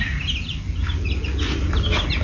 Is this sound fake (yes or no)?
no